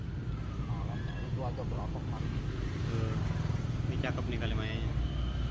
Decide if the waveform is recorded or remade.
recorded